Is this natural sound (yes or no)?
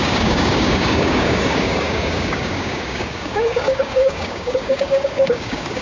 no